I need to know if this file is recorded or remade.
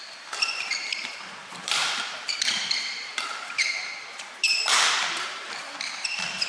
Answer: remade